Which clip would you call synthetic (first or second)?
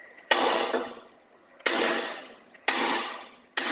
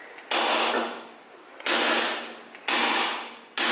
first